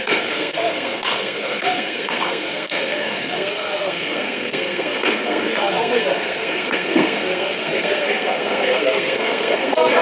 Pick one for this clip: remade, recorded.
remade